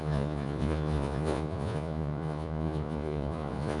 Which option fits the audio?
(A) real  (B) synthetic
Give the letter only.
B